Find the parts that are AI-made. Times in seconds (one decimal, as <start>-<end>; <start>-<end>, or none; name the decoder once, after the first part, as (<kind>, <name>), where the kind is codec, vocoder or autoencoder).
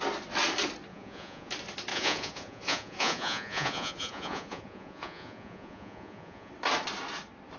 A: 0.9-1.5 (vocoder, Vocos); 1.9-6.5